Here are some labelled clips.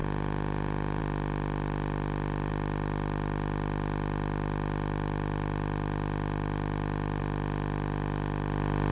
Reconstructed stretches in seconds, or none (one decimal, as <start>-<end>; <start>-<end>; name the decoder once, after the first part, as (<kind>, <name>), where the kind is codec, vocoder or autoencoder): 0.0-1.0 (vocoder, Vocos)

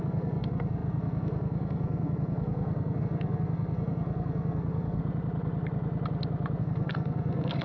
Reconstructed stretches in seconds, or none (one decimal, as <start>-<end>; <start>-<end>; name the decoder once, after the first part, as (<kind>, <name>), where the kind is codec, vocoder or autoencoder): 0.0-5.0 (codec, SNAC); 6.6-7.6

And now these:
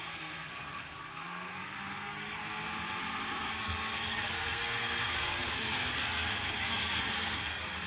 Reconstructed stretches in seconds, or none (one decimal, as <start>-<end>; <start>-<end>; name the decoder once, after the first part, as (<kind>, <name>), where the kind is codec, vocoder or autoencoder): 0.0-2.4 (codec, SNAC); 3.0-7.9